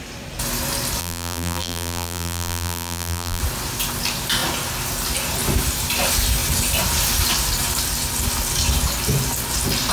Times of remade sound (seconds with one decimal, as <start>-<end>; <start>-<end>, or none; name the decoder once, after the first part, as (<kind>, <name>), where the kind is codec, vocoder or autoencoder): 1.0-3.4 (vocoder, BigVGAN v2)